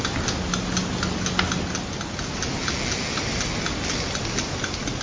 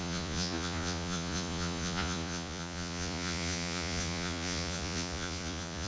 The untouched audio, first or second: first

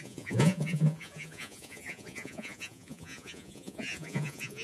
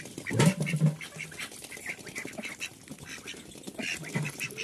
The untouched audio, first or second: second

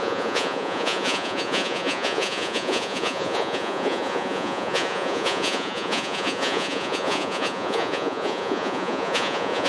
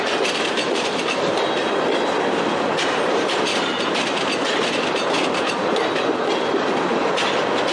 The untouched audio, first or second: second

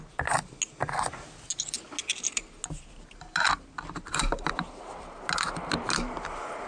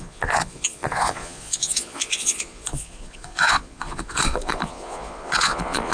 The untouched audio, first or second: first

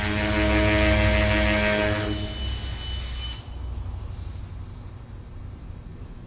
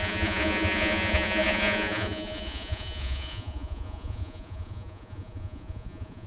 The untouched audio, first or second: first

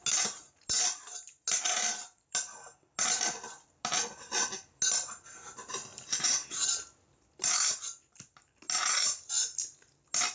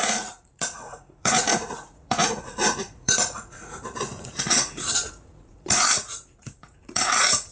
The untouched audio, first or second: first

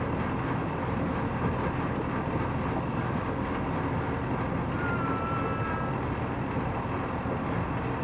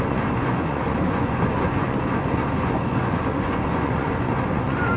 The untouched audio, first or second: first